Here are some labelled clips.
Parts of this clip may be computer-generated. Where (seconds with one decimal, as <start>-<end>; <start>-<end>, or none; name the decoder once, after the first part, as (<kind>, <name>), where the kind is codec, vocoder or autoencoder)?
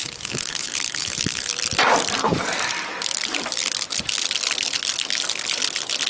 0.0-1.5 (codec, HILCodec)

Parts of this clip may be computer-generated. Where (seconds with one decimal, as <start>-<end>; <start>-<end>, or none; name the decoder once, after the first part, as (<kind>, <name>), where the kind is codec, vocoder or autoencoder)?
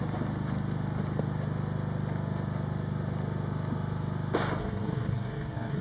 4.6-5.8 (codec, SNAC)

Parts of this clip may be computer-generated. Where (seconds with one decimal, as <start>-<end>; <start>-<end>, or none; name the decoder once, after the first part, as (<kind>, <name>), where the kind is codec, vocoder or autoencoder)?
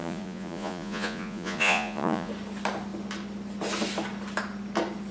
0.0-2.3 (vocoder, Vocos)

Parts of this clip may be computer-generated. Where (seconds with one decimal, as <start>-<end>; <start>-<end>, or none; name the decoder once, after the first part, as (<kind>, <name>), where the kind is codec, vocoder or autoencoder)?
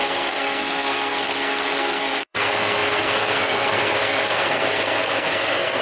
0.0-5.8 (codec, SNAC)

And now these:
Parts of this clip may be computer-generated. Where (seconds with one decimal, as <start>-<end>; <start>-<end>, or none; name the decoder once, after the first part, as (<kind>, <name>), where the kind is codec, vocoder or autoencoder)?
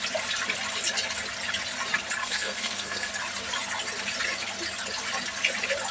2.2-3.1 (codec, SNAC)